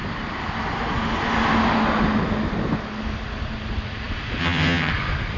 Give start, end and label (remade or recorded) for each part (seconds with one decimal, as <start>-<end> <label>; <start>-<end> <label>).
0.0-4.4 recorded; 4.4-4.9 remade; 4.9-5.4 recorded

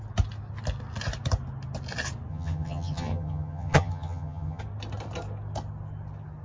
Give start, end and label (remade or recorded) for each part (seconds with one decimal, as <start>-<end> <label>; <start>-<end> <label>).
0.0-2.3 recorded; 2.3-4.6 remade; 4.6-6.4 recorded

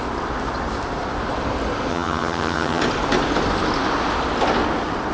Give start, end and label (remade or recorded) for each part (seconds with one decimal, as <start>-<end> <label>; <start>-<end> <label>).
0.0-1.9 recorded; 1.9-2.8 remade; 2.8-5.1 recorded